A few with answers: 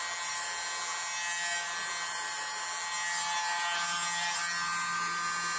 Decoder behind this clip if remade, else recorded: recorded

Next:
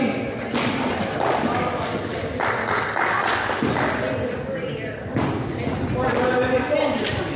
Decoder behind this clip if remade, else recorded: recorded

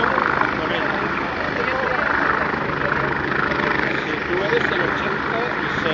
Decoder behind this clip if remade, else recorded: recorded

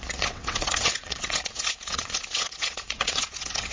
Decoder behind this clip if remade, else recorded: remade, vocoder, WaveNeXt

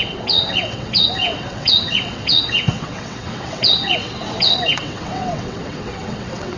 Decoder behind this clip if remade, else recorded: remade, vocoder, WaveNeXt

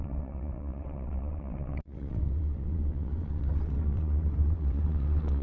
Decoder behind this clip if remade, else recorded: remade, vocoder, WaveNeXt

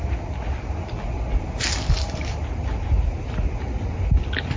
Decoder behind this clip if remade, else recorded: recorded